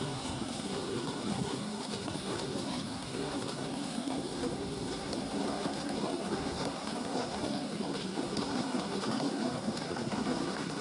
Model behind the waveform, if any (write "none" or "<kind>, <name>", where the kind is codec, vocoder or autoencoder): codec, SNAC